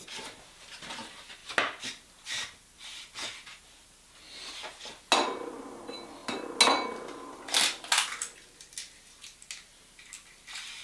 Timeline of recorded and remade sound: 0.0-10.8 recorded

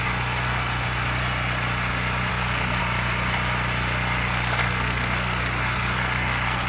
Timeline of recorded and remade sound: 0.0-2.3 recorded; 2.3-2.8 remade; 2.8-4.2 recorded; 4.2-6.7 remade

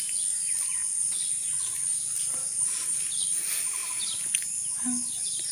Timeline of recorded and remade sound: 0.0-1.9 recorded; 1.9-3.0 remade; 3.0-5.5 recorded

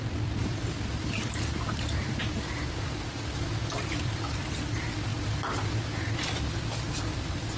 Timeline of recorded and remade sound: 0.0-2.6 remade; 2.6-3.7 recorded; 3.7-5.1 remade; 5.1-7.0 recorded; 7.0-7.6 remade

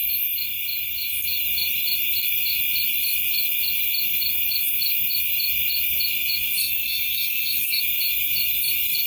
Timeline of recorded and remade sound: 0.0-6.6 recorded; 6.6-7.8 remade; 7.8-9.1 recorded